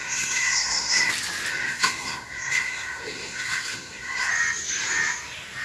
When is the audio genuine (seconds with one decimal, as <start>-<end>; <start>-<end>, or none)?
1.1-1.5; 4.3-5.6